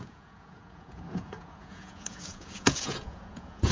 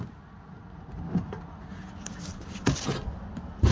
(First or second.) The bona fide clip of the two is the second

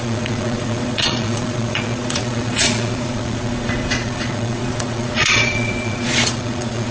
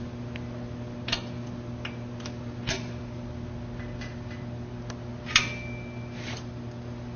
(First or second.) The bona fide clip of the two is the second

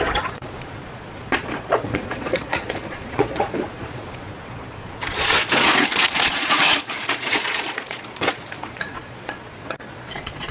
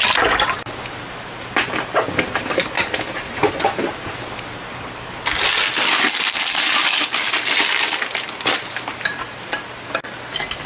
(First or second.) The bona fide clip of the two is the second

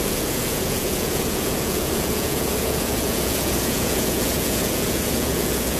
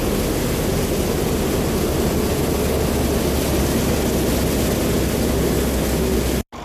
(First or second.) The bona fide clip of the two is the second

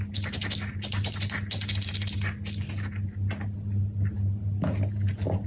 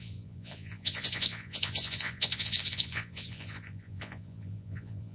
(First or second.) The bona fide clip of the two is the first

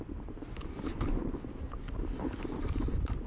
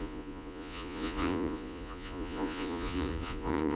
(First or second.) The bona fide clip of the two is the first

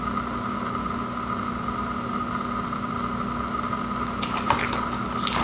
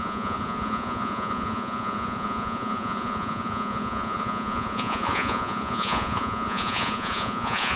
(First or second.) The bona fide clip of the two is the first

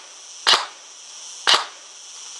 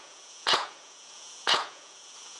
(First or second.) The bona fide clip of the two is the first